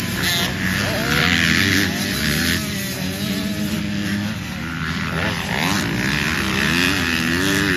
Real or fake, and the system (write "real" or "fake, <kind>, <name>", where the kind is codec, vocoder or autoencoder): real